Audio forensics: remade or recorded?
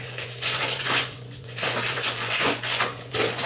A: remade